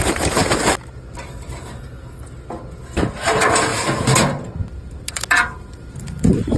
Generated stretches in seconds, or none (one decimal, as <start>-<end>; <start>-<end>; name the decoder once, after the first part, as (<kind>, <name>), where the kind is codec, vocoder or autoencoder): 0.0-0.4 (vocoder, BigVGAN v2); 3.1-3.7; 4.9-6.6